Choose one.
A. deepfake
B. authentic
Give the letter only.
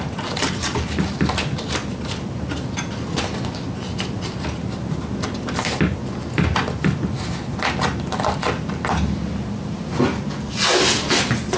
B